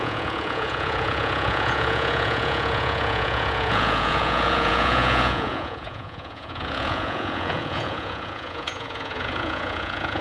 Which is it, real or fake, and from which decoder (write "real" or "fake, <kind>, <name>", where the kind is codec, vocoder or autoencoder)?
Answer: fake, vocoder, Vocos